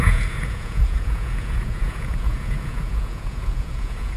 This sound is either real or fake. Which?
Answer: fake